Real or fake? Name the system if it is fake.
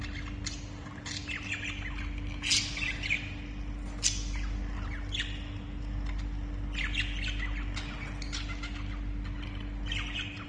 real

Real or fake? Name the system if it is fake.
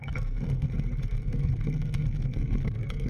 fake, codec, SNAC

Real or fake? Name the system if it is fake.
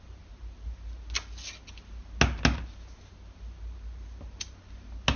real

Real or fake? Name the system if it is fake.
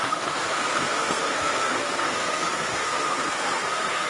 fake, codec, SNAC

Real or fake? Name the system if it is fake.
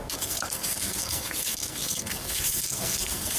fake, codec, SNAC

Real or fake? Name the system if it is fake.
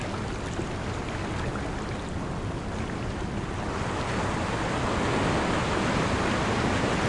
real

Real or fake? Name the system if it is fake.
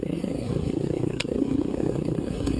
fake, codec, SNAC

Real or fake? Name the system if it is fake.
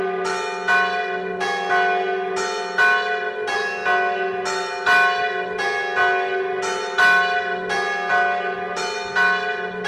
real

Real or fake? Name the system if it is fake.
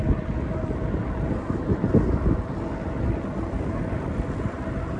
real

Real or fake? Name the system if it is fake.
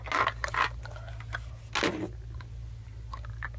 real